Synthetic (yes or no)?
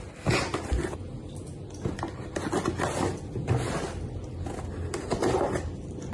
no